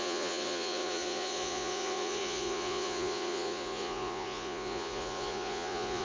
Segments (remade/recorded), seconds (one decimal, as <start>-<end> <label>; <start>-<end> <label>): 0.0-6.0 remade